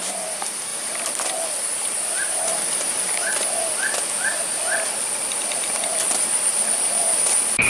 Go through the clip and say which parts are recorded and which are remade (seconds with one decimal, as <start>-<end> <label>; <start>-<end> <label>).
0.0-0.7 remade; 0.7-1.7 recorded; 1.7-2.5 remade; 2.5-5.2 recorded; 5.2-7.7 remade